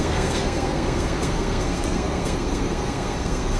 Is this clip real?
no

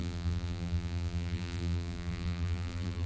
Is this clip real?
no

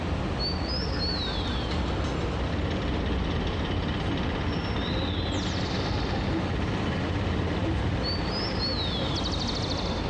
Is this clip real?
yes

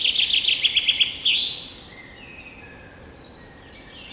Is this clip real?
yes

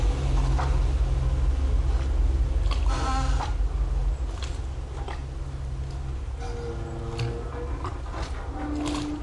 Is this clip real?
yes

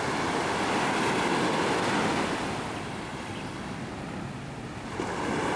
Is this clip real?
yes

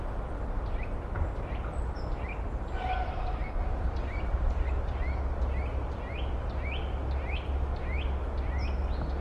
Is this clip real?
yes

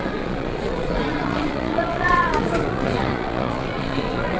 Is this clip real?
no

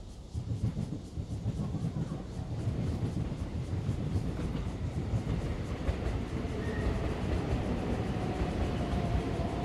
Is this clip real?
no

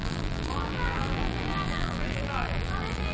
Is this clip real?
no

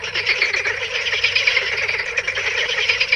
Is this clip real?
yes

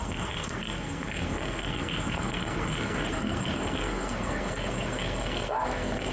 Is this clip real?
no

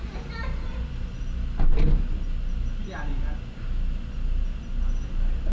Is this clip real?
yes